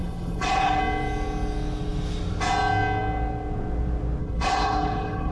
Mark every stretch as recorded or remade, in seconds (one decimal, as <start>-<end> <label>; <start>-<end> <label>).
0.0-0.8 remade; 0.8-4.2 recorded; 4.2-5.3 remade